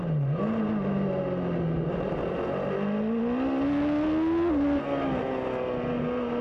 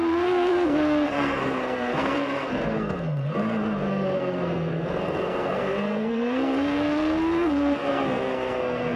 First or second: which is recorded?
first